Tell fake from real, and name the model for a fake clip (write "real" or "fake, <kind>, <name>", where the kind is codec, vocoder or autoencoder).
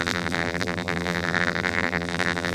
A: fake, vocoder, BigVGAN v2